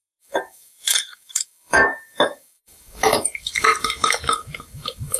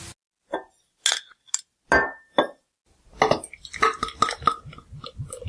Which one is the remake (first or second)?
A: first